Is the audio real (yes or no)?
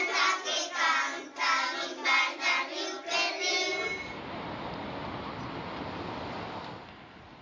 yes